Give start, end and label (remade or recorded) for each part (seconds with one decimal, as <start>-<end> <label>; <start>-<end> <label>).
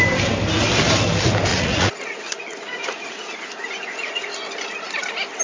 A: 0.0-1.5 recorded; 1.5-4.3 remade; 4.3-5.4 recorded